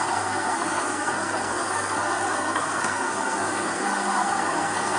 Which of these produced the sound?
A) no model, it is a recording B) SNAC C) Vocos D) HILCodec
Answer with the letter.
B